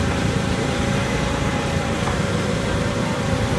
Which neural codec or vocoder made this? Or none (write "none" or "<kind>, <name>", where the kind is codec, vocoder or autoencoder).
vocoder, BigVGAN v2